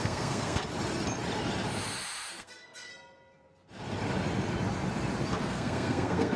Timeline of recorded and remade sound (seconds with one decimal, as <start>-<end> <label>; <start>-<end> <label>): 0.0-0.6 remade; 0.6-2.3 recorded; 2.3-2.9 remade; 2.9-5.4 recorded; 5.4-6.4 remade